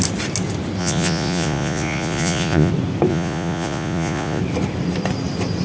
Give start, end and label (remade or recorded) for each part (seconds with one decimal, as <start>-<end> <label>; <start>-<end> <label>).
0.0-0.8 recorded; 0.8-2.7 remade; 2.7-3.1 recorded; 3.1-4.4 remade; 4.4-5.6 recorded